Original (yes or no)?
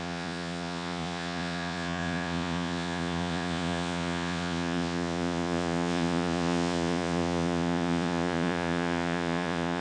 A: no